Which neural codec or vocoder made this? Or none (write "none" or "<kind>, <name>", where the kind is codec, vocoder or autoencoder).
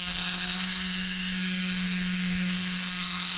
codec, SNAC